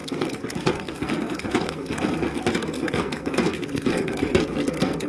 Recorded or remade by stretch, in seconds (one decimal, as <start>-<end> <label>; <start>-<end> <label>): 0.0-5.1 remade